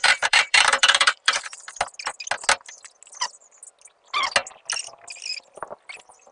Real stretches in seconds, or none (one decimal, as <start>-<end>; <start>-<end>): 1.6-6.3